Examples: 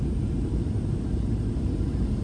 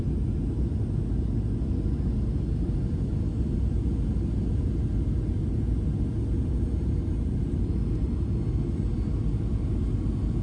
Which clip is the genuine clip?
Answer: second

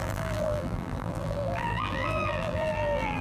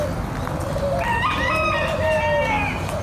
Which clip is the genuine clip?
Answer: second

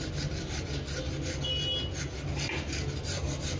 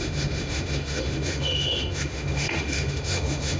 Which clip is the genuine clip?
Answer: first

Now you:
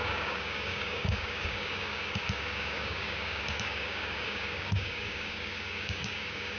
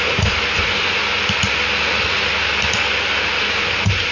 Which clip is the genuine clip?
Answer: second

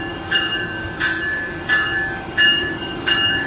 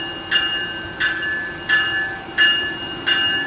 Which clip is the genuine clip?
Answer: second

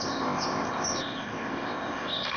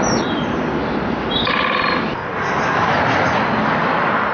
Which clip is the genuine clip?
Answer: second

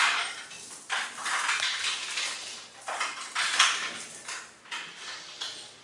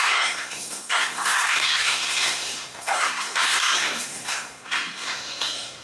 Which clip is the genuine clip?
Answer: first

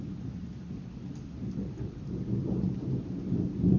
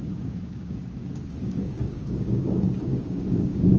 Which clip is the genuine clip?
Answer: first